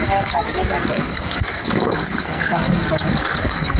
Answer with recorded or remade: remade